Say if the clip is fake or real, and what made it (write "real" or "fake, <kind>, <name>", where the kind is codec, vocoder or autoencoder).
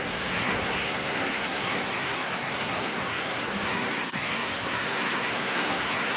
fake, codec, SNAC